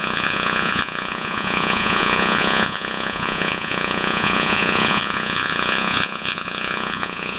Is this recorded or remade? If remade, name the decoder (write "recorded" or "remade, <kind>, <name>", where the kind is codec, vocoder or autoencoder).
remade, vocoder, Vocos